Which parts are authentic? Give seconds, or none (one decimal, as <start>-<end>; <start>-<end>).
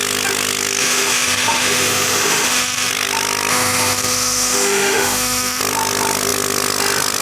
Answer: 0.0-0.8; 2.9-3.5; 5.6-7.2